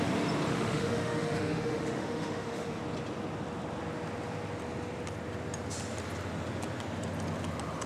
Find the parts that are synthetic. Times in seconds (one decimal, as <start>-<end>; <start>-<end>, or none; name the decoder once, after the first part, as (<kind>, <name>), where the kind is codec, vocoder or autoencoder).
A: 0.5-2.8 (autoencoder, DAC-VAE)